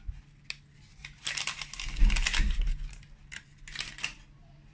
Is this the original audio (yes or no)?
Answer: yes